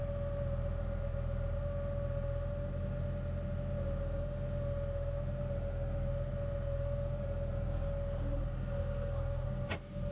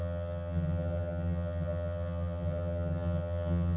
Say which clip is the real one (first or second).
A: first